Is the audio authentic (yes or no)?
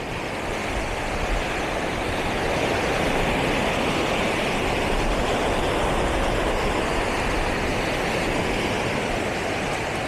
yes